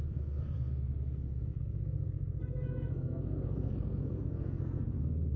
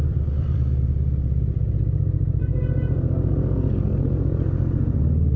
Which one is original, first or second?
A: second